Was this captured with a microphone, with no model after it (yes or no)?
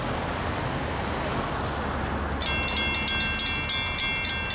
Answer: yes